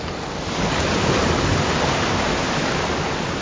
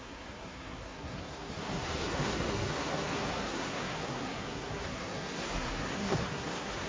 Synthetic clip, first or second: second